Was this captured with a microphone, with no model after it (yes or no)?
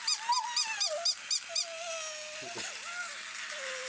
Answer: yes